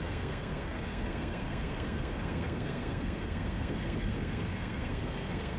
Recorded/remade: remade